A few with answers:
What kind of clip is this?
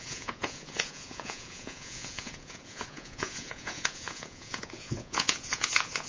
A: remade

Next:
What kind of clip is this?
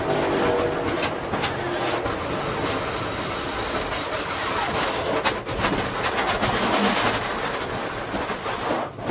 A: recorded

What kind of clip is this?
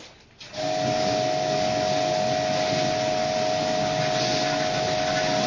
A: recorded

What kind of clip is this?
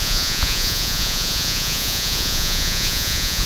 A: remade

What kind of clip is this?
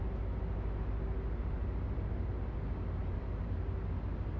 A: recorded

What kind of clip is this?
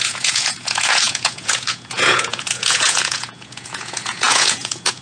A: remade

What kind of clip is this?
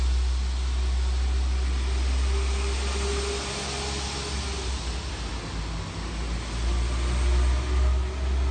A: recorded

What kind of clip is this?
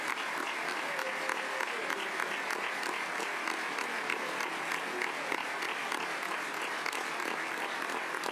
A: recorded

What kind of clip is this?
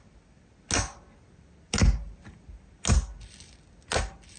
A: recorded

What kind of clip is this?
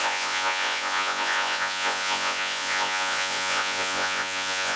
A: remade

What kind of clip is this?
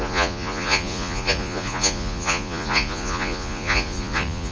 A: remade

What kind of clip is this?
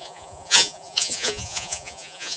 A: remade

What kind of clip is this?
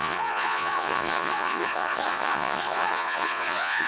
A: remade